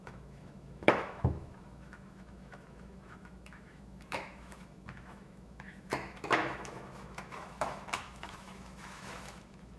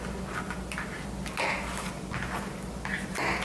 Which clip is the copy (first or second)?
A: first